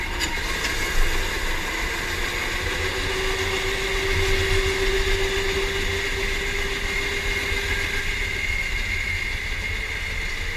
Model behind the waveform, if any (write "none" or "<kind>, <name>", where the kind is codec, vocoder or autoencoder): none